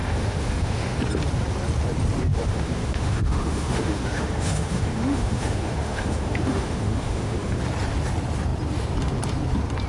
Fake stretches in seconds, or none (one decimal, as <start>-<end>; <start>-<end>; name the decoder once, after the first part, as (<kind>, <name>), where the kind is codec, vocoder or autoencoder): 0.0-1.0 (autoencoder, DAC-VAE); 2.3-7.6